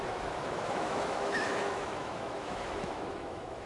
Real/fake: fake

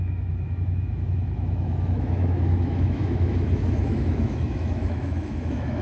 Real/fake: fake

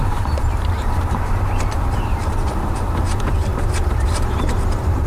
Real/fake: fake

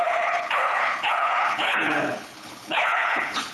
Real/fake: fake